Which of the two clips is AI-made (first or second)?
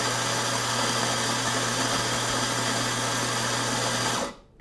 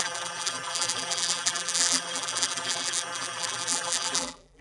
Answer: second